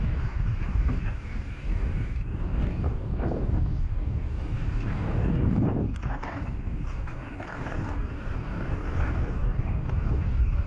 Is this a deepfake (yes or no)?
yes